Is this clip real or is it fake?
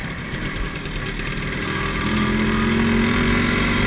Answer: real